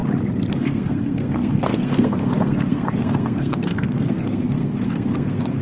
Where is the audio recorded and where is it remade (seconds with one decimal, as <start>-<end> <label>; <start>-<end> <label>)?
0.0-0.5 recorded; 0.5-5.6 remade